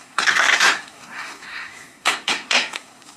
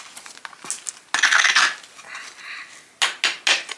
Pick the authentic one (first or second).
second